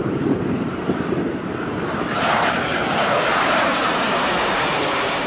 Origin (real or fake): fake